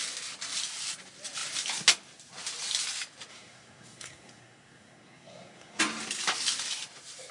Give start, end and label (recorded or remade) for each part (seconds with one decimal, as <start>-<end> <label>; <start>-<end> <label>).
0.0-3.3 recorded; 3.3-5.8 remade; 5.8-7.3 recorded